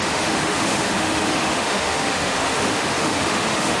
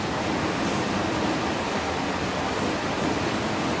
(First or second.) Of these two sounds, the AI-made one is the first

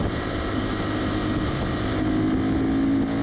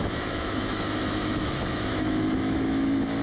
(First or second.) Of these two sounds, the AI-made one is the second